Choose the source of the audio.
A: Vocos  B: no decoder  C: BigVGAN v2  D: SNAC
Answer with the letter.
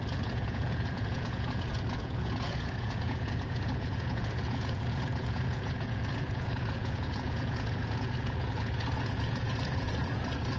A